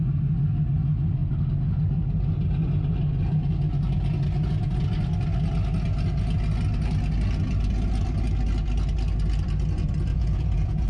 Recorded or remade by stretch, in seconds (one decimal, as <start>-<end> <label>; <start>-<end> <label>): 0.0-10.1 recorded; 10.1-10.9 remade

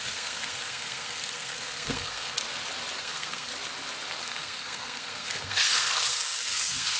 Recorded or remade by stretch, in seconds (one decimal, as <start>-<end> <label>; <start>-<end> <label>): 0.0-2.4 remade; 2.4-3.0 recorded; 3.0-3.5 remade; 3.5-4.2 recorded; 4.2-7.0 remade

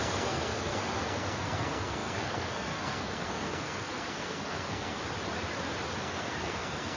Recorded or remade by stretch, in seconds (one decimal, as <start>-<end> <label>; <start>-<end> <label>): 0.0-5.0 remade; 5.0-6.0 recorded; 6.0-7.0 remade

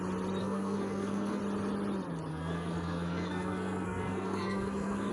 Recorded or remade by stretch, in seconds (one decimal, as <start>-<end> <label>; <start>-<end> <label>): 0.0-0.4 recorded; 0.4-1.4 remade; 1.4-2.3 recorded; 2.3-5.1 remade